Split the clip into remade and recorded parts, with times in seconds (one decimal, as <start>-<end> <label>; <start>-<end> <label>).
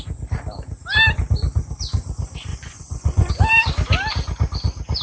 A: 0.0-2.5 recorded; 2.5-3.3 remade; 3.3-5.0 recorded